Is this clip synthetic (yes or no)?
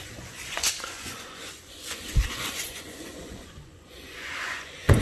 yes